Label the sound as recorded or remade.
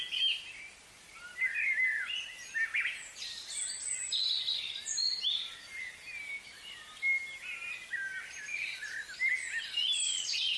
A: recorded